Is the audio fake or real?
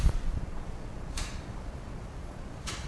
fake